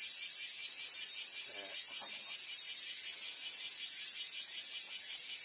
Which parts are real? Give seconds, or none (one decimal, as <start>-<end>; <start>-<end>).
0.0-5.4